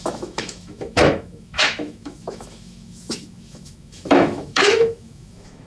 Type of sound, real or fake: fake